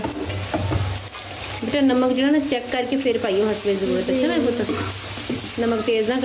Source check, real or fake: real